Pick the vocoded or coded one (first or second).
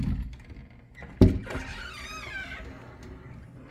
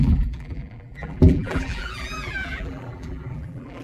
second